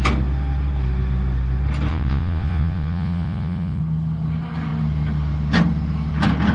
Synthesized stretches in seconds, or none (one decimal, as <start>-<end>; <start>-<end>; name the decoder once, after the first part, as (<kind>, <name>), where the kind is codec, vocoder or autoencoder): 1.9-3.8 (vocoder, Vocos)